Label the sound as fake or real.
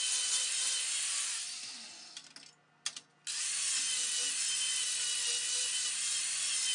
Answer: real